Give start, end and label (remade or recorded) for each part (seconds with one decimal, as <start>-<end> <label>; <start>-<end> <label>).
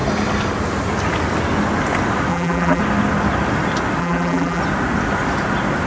0.0-2.3 recorded; 2.3-2.8 remade; 2.8-4.0 recorded; 4.0-4.6 remade; 4.6-5.9 recorded